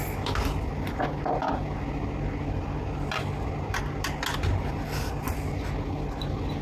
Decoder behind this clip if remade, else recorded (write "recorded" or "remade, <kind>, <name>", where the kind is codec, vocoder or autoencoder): recorded